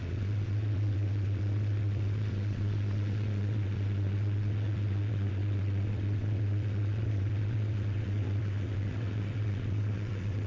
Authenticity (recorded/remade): remade